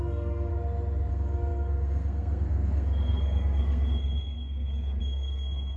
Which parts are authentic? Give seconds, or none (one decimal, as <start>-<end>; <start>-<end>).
0.5-1.1